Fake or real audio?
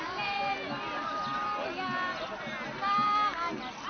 real